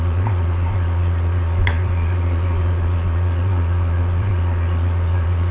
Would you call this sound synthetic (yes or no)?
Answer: yes